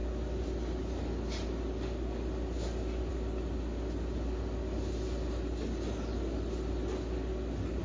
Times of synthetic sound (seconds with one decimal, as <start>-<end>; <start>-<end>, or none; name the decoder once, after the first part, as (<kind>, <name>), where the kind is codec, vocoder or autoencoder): none